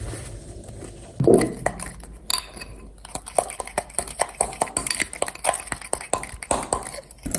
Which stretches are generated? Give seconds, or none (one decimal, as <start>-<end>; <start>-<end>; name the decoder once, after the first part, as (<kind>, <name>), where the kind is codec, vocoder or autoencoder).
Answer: none